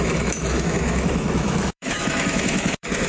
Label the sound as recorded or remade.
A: remade